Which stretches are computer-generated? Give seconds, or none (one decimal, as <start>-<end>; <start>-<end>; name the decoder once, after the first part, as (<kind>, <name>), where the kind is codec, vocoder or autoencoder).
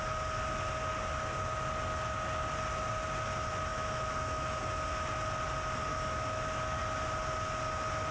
3.7-4.6 (autoencoder, DAC-VAE); 5.9-6.8